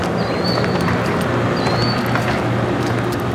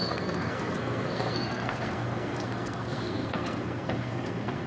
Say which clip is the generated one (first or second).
second